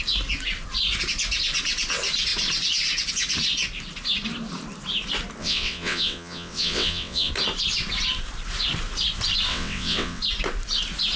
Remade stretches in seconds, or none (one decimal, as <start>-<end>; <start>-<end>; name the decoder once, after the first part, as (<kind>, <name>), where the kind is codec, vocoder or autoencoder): 5.4-7.3 (vocoder, WaveNeXt); 9.5-10.2